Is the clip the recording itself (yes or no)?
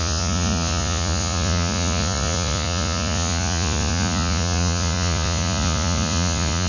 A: no